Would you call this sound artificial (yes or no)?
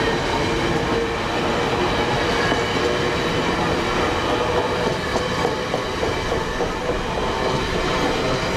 no